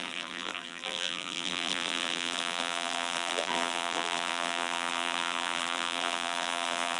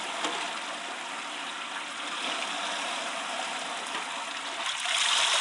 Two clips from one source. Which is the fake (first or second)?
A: first